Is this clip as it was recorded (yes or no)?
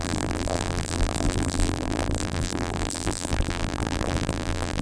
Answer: no